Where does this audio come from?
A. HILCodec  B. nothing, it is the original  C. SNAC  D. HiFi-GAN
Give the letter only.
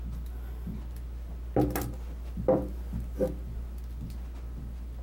B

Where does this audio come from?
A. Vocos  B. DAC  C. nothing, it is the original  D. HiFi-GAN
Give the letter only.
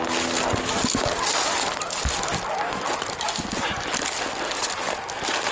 C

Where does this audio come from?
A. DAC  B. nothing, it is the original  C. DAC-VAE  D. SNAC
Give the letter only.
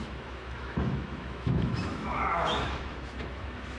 C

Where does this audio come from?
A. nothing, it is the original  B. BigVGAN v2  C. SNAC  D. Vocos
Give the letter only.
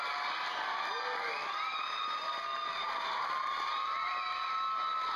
A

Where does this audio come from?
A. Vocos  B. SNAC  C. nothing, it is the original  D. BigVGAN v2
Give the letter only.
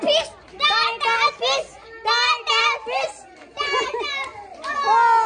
C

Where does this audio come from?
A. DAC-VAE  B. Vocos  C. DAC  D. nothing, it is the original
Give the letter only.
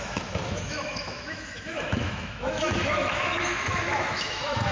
A